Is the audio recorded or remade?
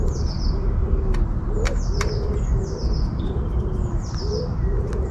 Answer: recorded